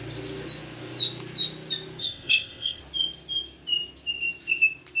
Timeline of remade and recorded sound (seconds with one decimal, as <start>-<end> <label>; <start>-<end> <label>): 0.0-2.0 recorded; 2.0-2.8 remade; 2.8-5.0 recorded